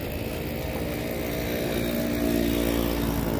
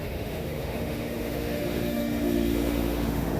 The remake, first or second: second